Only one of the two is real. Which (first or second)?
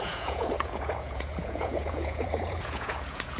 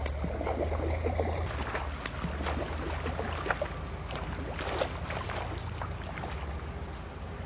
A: second